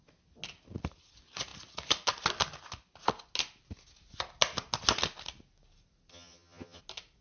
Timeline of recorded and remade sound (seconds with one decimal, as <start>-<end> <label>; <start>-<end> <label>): 0.0-6.1 recorded; 6.1-6.8 remade; 6.8-7.2 recorded